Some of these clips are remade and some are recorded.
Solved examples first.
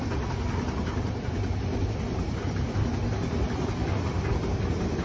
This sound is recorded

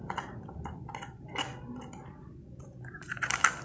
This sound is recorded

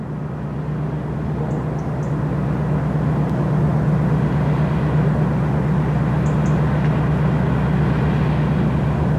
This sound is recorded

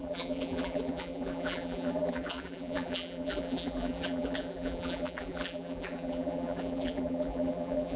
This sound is remade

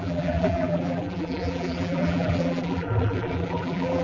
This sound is remade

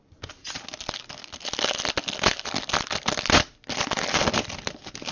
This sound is recorded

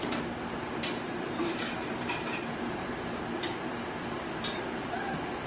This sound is remade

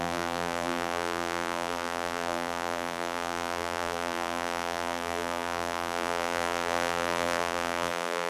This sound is remade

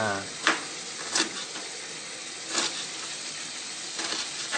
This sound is recorded